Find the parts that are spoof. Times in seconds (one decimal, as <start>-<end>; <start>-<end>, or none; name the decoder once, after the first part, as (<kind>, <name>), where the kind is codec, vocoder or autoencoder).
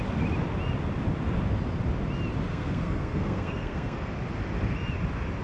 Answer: 2.5-4.1 (codec, SNAC)